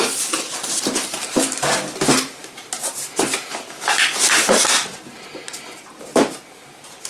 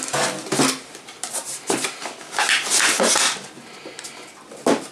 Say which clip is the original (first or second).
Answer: second